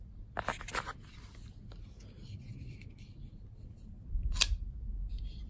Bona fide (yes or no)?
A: yes